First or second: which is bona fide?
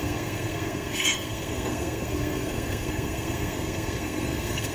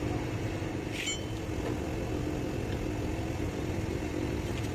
second